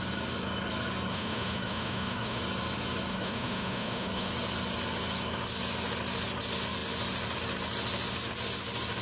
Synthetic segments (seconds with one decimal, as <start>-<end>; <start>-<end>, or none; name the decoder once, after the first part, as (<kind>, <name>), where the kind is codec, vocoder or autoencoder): 1.1-2.4 (autoencoder, DAC-VAE); 3.1-4.3